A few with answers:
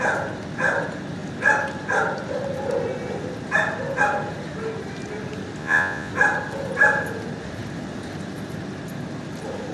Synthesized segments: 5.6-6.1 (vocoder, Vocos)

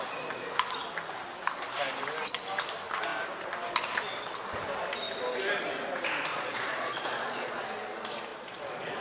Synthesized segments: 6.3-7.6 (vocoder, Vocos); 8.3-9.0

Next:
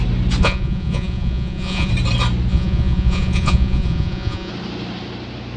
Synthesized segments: 0.4-1.9 (vocoder, Vocos); 2.5-4.5

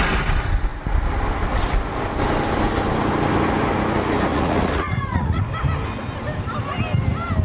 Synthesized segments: 4.3-5.4 (vocoder, Vocos)

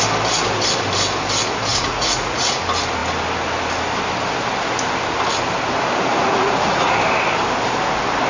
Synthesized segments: 1.7-2.6 (vocoder, Vocos); 6.1-7.0